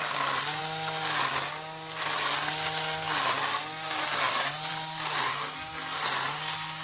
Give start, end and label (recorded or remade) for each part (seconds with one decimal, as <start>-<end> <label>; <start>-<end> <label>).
0.0-6.8 recorded